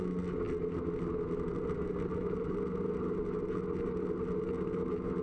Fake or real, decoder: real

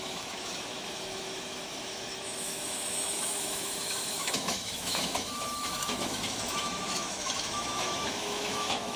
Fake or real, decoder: fake, autoencoder, DAC-VAE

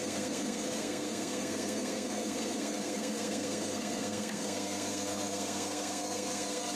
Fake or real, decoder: fake, codec, SNAC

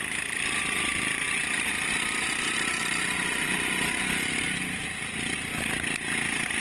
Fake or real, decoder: real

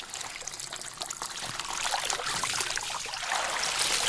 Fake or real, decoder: real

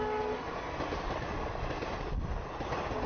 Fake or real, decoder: real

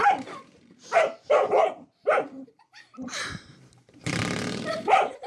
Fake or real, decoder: fake, vocoder, BigVGAN v2